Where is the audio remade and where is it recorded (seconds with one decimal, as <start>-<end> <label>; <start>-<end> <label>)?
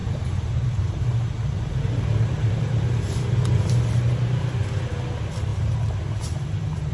0.0-3.7 remade; 3.7-5.5 recorded; 5.5-6.9 remade